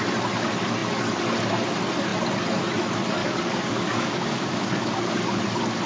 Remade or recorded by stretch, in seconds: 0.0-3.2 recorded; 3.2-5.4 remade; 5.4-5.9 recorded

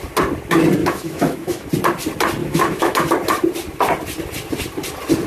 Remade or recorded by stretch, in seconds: 0.0-0.8 recorded; 0.8-1.7 remade; 1.7-2.4 recorded; 2.4-3.1 remade; 3.1-5.3 recorded

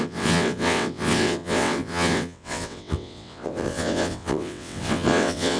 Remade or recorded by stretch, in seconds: 0.0-5.6 remade

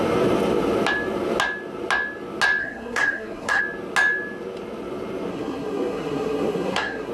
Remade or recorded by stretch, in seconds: 0.0-2.6 recorded; 2.6-3.6 remade; 3.6-5.3 recorded; 5.3-7.1 remade

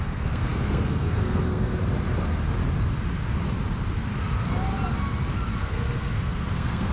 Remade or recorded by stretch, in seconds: 0.0-1.7 remade; 1.7-5.6 recorded; 5.6-6.9 remade